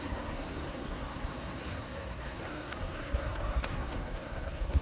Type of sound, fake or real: fake